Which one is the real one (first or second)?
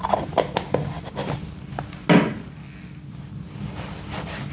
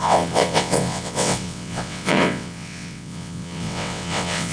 first